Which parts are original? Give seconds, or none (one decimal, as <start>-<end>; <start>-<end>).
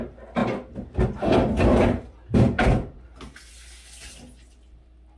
0.0-5.2